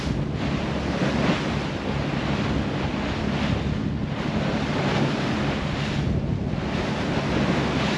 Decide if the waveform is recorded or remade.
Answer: recorded